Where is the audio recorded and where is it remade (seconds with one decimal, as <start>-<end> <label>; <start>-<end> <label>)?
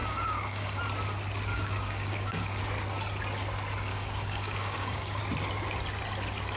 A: 0.0-0.8 remade; 0.8-1.5 recorded; 1.5-2.6 remade; 2.6-3.9 recorded; 3.9-5.2 remade; 5.2-6.6 recorded